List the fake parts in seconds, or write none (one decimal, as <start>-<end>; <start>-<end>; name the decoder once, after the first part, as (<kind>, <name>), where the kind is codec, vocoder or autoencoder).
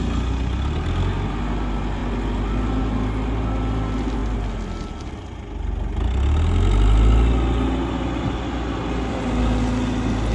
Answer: none